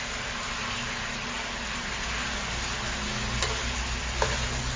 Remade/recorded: recorded